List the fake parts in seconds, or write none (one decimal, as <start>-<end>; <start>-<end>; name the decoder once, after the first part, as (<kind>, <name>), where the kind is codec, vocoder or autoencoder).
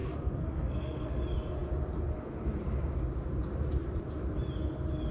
0.0-1.2 (codec, SNAC)